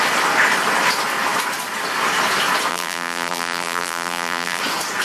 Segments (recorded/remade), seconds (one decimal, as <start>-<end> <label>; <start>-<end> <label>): 0.0-2.7 recorded; 2.7-4.6 remade; 4.6-5.0 recorded